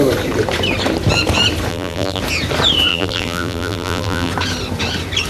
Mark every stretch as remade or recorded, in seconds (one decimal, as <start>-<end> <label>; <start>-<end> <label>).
0.0-1.7 recorded; 1.7-2.2 remade; 2.2-2.9 recorded; 2.9-4.3 remade; 4.3-5.3 recorded